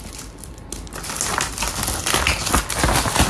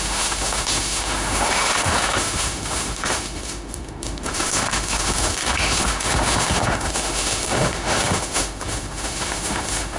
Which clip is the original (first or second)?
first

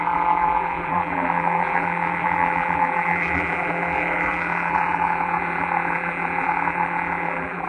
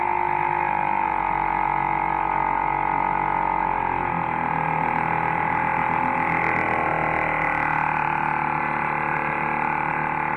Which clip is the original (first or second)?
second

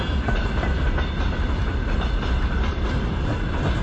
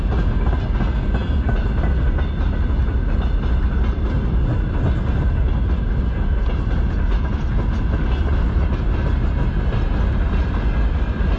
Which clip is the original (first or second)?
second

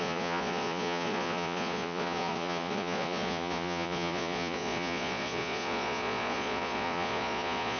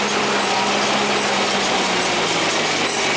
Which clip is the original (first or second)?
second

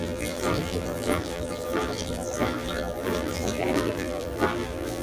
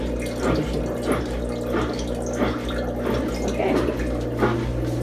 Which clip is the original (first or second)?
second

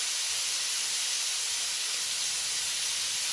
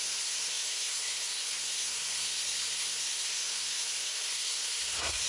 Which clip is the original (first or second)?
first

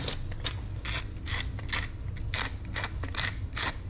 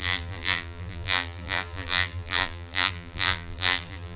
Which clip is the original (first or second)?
first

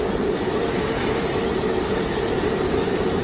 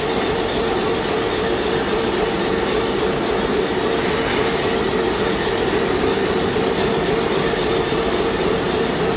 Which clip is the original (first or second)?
second